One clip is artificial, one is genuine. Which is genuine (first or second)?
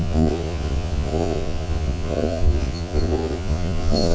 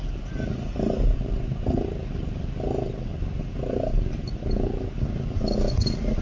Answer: second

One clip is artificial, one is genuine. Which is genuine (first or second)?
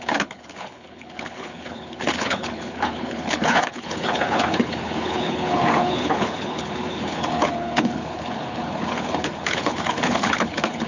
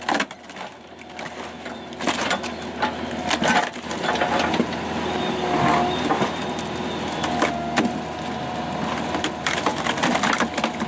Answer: second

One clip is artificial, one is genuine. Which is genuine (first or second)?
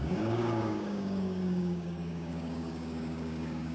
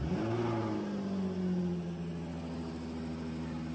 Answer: second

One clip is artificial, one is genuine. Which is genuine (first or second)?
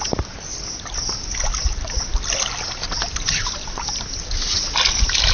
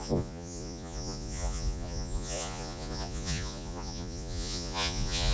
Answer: first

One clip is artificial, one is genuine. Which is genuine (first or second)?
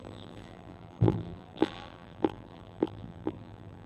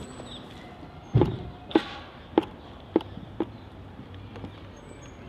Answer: second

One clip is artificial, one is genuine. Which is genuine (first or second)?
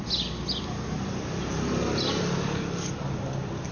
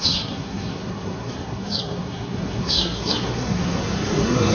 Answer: first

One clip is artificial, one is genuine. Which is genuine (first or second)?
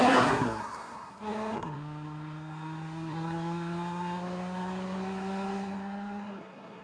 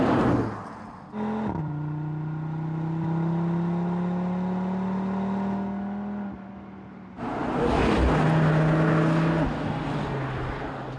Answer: second